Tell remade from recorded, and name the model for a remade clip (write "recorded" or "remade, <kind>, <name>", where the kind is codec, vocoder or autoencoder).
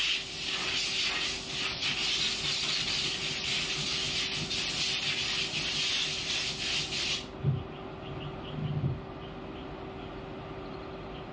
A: recorded